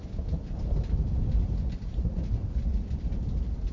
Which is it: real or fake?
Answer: real